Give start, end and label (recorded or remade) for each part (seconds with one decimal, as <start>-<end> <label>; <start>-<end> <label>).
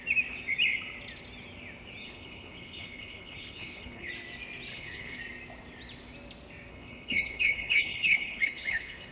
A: 0.0-2.0 recorded; 2.0-4.1 remade; 4.1-4.7 recorded; 4.7-5.2 remade; 5.2-6.7 recorded; 6.7-9.1 remade